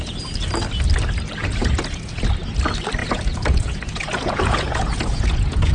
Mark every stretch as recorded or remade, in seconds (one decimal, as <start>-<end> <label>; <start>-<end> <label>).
0.0-1.4 recorded; 1.4-2.2 remade; 2.2-3.0 recorded; 3.0-5.7 remade